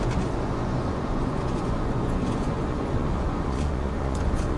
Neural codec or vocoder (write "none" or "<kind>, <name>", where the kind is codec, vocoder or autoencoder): vocoder, Vocos